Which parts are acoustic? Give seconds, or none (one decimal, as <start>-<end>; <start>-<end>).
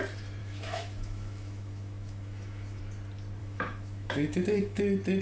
0.0-0.4; 2.8-3.4; 4.8-5.2